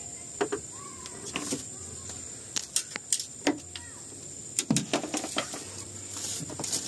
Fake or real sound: real